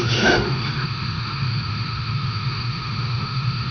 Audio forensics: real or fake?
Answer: fake